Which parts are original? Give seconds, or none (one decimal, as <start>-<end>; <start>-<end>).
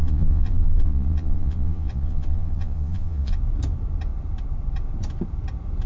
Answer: 3.4-5.9